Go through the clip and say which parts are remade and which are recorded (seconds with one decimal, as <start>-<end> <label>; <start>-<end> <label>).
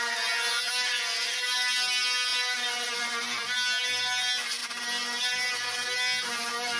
0.0-6.8 recorded